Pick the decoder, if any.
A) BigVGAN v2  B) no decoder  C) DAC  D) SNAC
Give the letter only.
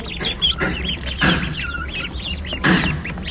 B